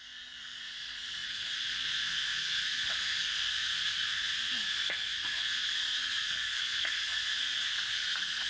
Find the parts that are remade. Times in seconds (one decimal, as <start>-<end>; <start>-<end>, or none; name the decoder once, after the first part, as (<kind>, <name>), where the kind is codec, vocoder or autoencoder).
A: 0.0-8.5 (codec, SNAC)